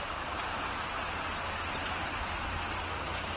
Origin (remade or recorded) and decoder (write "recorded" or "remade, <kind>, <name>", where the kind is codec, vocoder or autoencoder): recorded